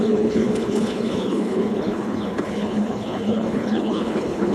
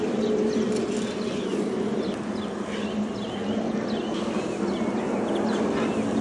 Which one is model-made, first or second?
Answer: first